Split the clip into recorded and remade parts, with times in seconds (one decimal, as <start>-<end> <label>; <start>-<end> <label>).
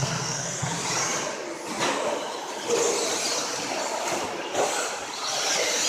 0.0-0.7 remade; 0.7-5.9 recorded